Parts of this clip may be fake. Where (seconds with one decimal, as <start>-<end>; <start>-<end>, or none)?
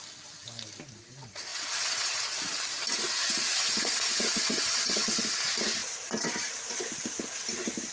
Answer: 1.5-2.2; 3.6-5.1